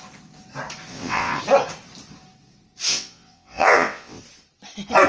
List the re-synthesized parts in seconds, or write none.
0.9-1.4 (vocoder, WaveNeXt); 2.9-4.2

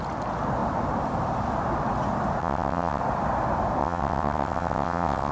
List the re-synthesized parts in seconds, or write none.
2.4-3.0 (vocoder, WaveNeXt); 3.8-5.3

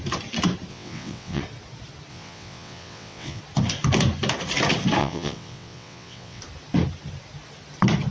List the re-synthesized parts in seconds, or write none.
0.7-1.4 (vocoder, WaveNeXt); 2.1-3.4; 5.0-6.4

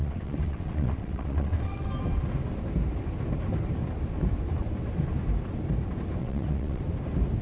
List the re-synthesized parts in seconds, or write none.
0.0-1.9 (vocoder, WaveNeXt); 6.2-6.8